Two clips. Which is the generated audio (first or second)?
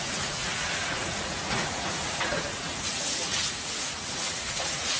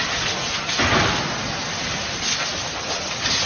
first